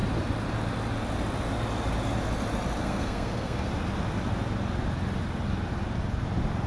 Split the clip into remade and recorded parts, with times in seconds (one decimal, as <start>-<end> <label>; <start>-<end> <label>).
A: 0.0-2.8 recorded; 2.8-3.7 remade; 3.7-6.7 recorded